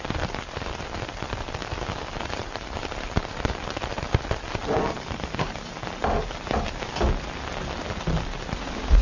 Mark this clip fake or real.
real